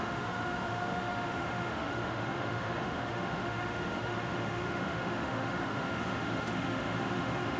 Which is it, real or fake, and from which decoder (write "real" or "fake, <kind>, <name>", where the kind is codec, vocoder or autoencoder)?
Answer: fake, autoencoder, DAC-VAE